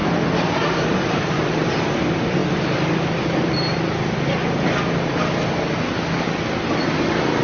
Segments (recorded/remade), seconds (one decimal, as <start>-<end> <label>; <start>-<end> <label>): 0.0-7.4 recorded